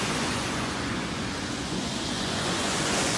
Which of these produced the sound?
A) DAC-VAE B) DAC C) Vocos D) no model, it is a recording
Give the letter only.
C